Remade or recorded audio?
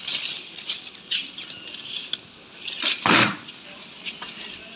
recorded